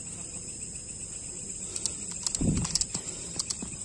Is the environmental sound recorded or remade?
recorded